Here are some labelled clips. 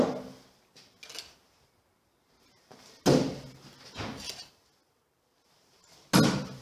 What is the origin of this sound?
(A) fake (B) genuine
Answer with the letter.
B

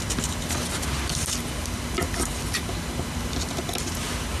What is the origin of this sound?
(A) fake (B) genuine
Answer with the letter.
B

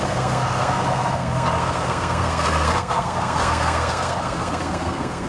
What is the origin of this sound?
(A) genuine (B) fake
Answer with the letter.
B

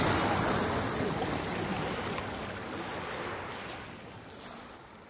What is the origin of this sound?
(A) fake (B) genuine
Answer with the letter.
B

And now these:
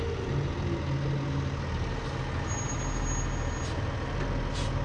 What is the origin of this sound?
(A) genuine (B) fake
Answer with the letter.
A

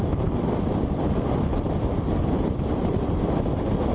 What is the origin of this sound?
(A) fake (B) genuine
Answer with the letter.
B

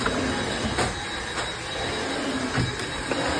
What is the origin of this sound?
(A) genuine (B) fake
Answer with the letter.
A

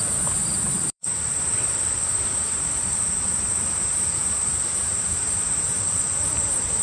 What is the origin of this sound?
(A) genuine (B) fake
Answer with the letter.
B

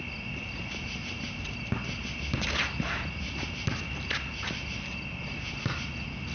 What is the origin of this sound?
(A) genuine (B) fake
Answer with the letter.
A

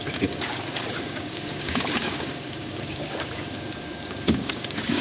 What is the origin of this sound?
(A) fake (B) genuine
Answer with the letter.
A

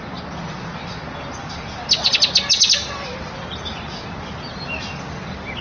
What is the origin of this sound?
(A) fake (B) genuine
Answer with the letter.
B